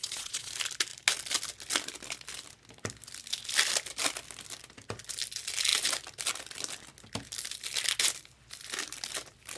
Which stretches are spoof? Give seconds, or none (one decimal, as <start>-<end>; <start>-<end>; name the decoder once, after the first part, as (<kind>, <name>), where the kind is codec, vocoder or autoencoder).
0.0-0.5 (vocoder, Vocos)